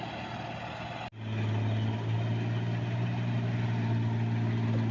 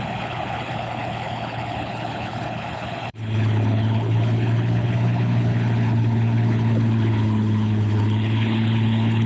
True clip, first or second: first